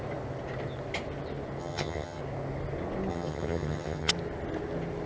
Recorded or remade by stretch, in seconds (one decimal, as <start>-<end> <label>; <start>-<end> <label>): 0.0-1.6 recorded; 1.6-2.2 remade; 2.2-3.1 recorded; 3.1-4.1 remade; 4.1-5.1 recorded